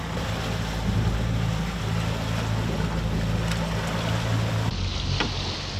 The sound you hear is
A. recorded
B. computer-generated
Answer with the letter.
A